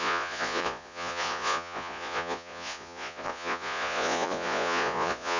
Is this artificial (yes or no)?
yes